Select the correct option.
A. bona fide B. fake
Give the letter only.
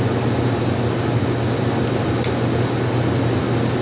A